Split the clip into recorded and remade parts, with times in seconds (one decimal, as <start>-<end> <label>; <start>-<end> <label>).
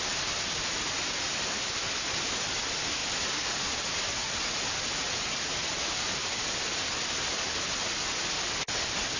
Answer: 0.0-9.2 recorded